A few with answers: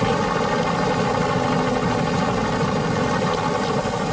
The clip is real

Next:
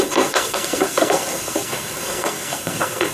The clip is fake